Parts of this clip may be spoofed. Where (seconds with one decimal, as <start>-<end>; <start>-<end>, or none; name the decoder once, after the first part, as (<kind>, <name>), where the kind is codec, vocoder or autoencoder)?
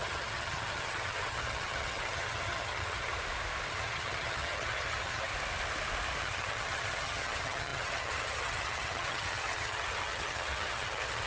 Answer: 0.0-3.1 (vocoder, HiFi-GAN); 3.7-5.3; 6.2-11.3